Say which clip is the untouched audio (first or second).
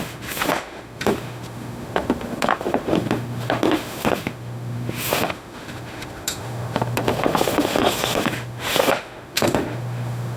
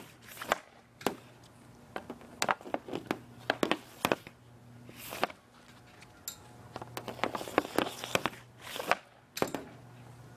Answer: second